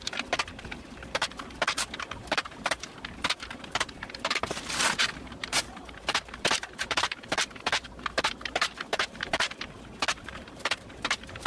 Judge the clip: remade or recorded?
remade